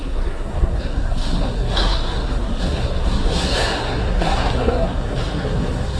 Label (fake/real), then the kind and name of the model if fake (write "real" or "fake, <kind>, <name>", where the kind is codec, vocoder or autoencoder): fake, codec, SNAC